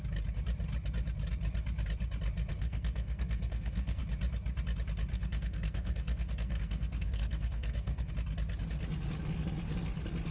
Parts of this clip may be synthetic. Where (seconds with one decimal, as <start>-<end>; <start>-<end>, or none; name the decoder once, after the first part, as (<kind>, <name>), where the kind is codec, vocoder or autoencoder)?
2.5-4.0 (codec, SNAC); 5.1-8.1